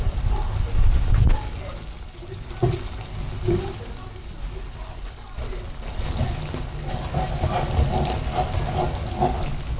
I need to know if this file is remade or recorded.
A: recorded